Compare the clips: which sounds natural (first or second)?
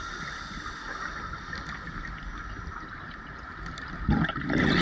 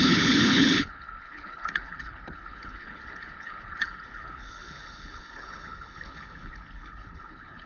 first